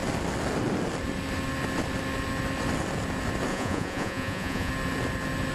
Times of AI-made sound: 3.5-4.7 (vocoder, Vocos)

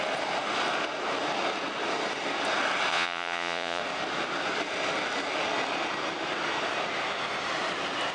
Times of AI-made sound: 2.9-3.8 (vocoder, Vocos)

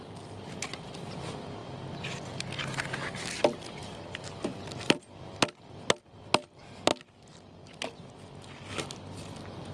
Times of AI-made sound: none